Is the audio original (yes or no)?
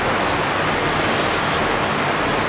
yes